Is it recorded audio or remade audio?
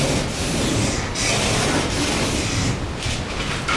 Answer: recorded